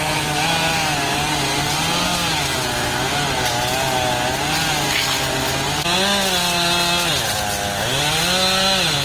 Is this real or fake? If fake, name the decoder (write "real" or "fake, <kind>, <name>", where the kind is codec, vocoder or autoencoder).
real